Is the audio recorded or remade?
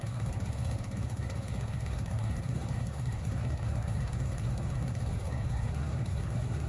remade